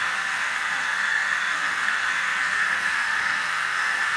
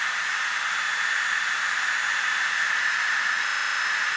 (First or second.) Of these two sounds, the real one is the second